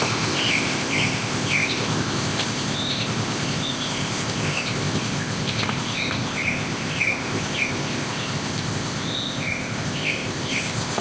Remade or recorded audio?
remade